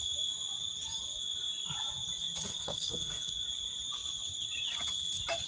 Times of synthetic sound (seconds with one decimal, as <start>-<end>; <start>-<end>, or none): 2.5-3.3